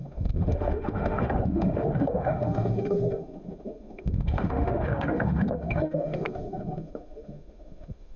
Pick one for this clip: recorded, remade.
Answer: remade